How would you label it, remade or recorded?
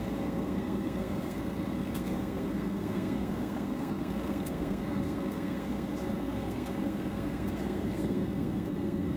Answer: remade